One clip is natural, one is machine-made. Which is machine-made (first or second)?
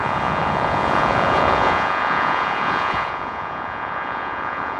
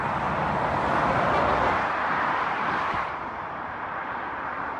first